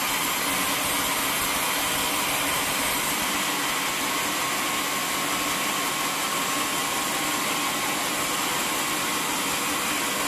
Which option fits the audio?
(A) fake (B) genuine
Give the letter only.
B